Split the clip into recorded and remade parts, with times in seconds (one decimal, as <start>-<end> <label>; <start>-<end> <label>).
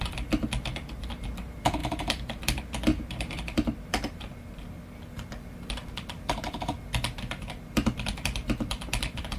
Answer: 0.0-5.8 remade; 5.8-8.1 recorded; 8.1-9.4 remade